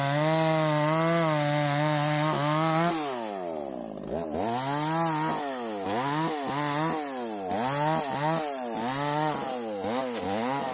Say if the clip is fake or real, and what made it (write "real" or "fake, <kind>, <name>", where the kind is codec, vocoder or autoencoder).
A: real